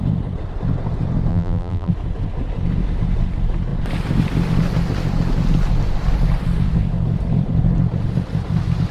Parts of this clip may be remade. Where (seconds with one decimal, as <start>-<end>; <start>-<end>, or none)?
1.3-1.9